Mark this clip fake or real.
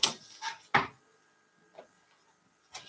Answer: real